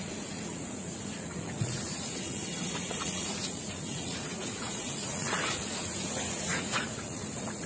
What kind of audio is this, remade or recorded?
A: remade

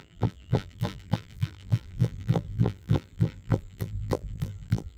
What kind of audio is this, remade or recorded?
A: remade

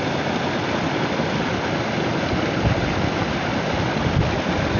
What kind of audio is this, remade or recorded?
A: recorded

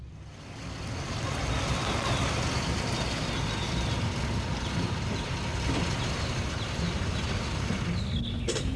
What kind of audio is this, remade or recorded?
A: recorded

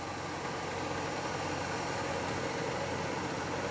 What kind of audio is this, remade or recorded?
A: recorded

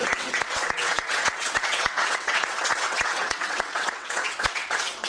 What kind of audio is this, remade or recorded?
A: remade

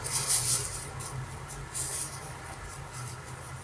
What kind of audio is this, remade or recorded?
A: recorded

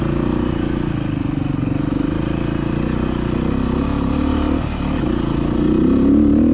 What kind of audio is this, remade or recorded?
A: recorded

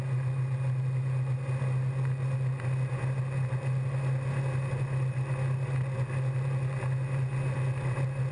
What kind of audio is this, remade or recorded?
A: recorded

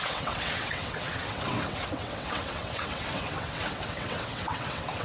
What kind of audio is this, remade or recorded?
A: remade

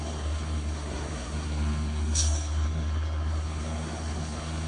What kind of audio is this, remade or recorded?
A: remade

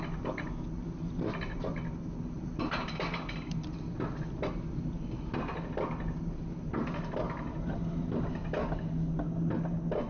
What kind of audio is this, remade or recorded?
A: recorded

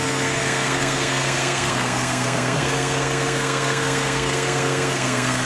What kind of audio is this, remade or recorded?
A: remade